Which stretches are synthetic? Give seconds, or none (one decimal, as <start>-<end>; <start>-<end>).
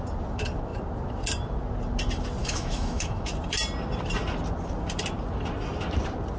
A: 2.4-3.3